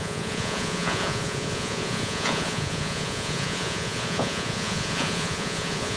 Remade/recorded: remade